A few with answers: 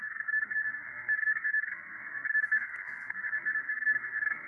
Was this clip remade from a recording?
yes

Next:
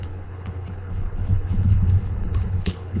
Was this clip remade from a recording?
yes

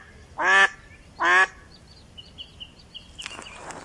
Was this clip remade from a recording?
no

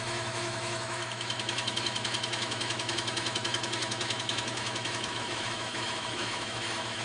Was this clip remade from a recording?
yes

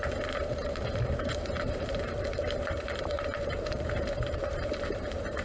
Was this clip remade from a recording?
yes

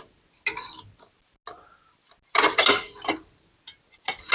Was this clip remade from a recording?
no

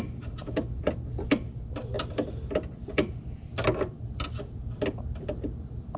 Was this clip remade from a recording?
no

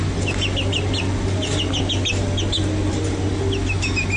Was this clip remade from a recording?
no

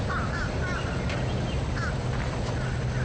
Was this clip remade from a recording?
no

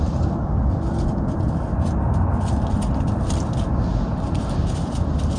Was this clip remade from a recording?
no